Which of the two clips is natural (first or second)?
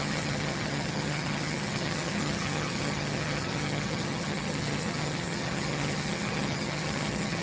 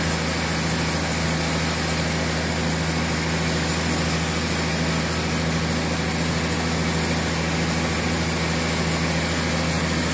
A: second